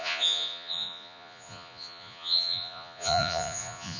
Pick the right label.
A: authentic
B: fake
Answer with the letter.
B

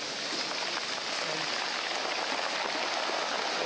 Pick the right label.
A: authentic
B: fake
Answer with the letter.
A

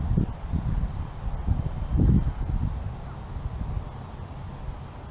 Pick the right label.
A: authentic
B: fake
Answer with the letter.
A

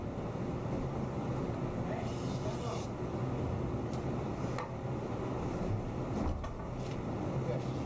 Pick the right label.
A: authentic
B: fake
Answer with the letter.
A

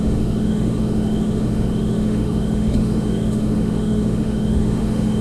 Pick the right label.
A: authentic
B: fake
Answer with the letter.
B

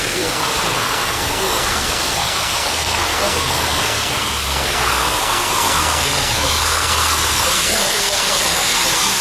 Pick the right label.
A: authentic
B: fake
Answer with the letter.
B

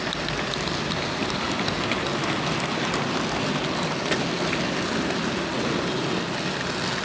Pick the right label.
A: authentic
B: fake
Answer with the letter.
A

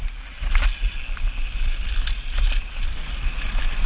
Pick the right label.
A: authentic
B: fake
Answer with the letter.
A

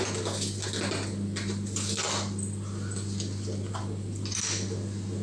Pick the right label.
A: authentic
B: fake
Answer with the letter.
A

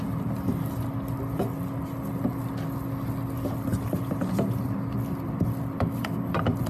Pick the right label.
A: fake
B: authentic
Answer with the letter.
B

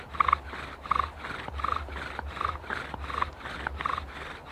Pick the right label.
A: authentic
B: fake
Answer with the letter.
A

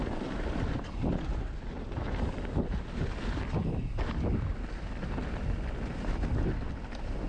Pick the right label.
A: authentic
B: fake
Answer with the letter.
A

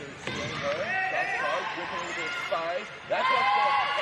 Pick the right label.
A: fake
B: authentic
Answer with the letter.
B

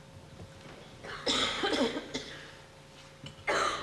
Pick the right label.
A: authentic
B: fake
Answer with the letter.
A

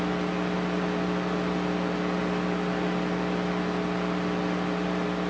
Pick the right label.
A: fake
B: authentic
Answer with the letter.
B